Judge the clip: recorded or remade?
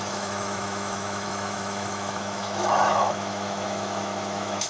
remade